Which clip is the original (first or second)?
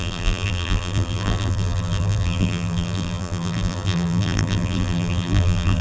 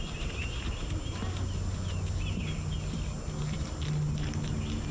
second